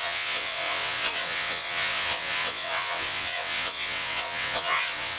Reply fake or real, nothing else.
fake